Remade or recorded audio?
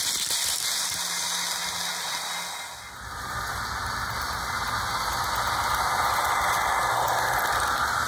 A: recorded